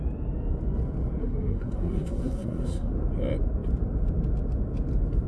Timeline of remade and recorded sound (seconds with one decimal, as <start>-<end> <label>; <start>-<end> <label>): 0.0-1.2 recorded; 1.2-2.9 remade; 2.9-5.3 recorded